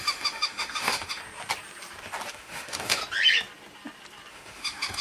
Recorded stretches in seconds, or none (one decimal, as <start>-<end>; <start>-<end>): 1.2-2.3; 3.0-4.3